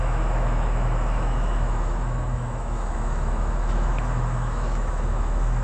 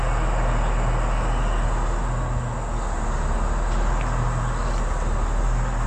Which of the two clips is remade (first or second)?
first